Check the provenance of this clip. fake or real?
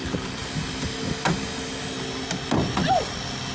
real